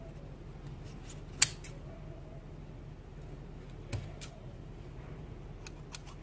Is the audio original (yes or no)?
yes